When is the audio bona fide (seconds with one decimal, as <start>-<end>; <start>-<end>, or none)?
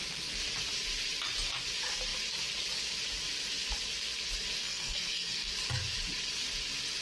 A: 0.0-4.6; 5.5-7.0